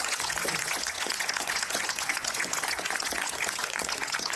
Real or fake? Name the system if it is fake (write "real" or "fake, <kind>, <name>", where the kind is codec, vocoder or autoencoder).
fake, vocoder, Vocos